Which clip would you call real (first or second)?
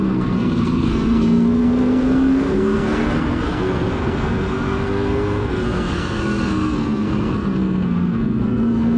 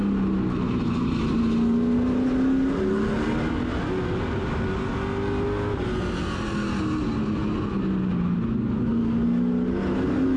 second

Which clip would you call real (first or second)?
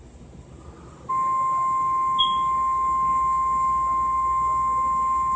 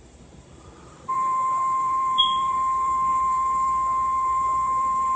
first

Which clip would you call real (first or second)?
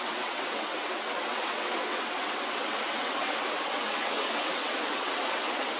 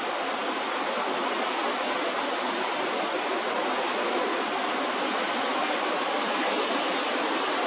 second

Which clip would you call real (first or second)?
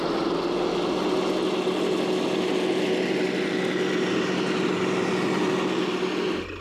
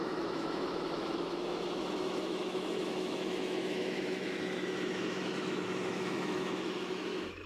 first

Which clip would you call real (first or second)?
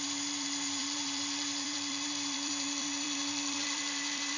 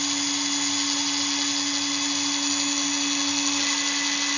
second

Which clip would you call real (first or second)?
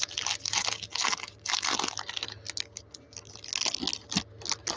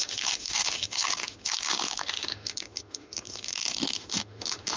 first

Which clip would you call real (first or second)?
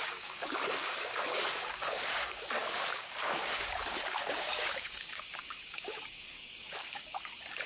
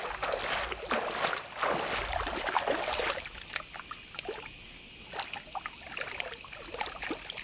second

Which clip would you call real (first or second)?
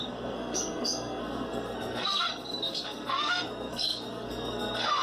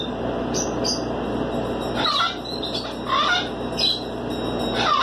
second